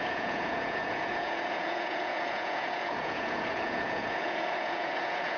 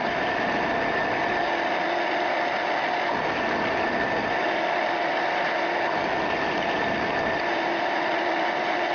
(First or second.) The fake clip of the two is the first